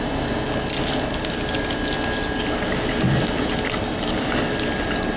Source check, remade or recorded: recorded